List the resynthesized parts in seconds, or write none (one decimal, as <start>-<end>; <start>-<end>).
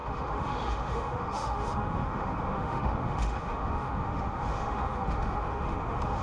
0.0-6.2